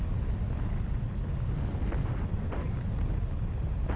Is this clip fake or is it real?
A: real